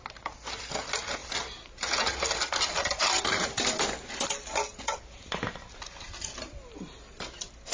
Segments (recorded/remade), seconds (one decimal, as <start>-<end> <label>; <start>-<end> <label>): 0.0-7.7 recorded